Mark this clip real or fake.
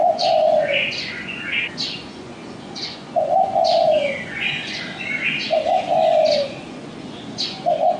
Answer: fake